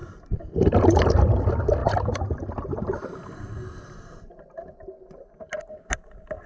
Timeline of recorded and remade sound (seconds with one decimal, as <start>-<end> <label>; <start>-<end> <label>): 0.0-6.5 recorded